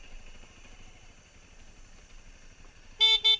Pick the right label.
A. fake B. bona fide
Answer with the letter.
B